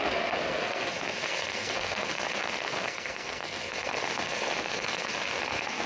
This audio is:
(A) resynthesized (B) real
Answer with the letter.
A